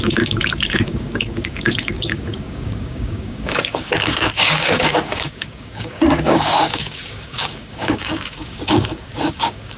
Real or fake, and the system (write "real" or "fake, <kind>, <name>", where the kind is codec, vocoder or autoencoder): fake, codec, DAC